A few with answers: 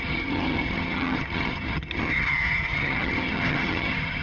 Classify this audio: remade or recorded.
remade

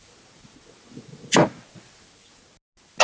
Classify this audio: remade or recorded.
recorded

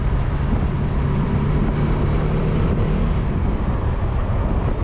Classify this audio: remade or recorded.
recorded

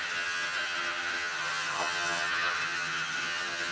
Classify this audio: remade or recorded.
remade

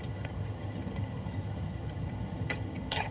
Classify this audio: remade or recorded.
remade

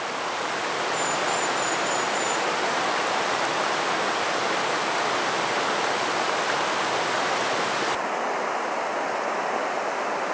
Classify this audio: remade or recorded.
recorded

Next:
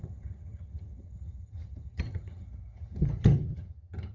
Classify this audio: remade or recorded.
remade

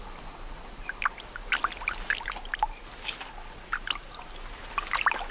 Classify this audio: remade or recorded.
recorded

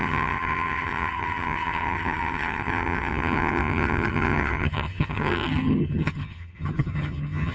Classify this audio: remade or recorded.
remade